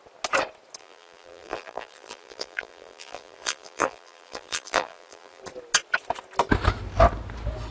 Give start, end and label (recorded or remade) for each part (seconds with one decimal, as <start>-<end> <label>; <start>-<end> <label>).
0.0-0.8 recorded; 0.8-5.4 remade; 5.4-7.7 recorded